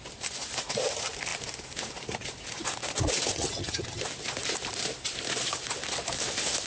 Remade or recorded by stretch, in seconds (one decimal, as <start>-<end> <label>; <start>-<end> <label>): 0.0-3.3 recorded; 3.3-4.0 remade; 4.0-6.7 recorded